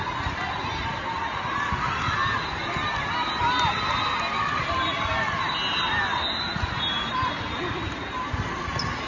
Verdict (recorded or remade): recorded